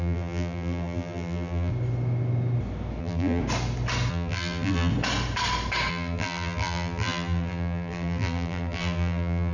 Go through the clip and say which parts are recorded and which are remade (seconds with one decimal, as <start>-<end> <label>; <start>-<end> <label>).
0.0-1.7 remade; 1.7-3.0 recorded; 3.0-3.4 remade; 3.4-4.1 recorded; 4.1-4.9 remade; 4.9-5.9 recorded; 5.9-9.5 remade